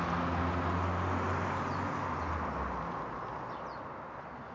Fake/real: real